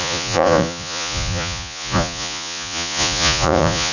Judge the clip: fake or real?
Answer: fake